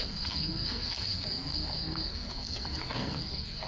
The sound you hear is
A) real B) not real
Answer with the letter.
B